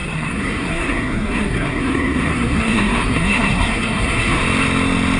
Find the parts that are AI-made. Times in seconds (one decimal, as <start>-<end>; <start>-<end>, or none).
0.0-4.4